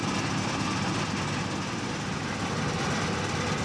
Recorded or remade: recorded